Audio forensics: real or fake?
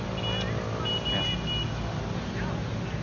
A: real